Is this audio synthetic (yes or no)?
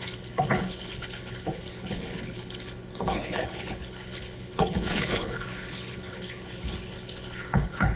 yes